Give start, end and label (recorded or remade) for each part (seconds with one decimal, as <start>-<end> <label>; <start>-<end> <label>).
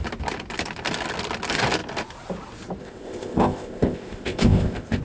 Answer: 0.0-2.8 recorded; 2.8-5.0 remade